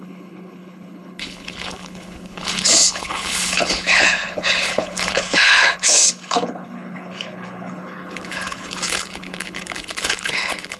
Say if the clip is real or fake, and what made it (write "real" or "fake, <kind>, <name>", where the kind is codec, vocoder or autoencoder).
fake, codec, HILCodec